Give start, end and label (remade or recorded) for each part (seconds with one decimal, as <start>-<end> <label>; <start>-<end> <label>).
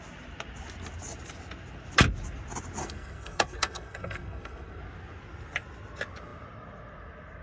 0.0-2.8 recorded; 2.8-4.8 remade; 4.8-7.4 recorded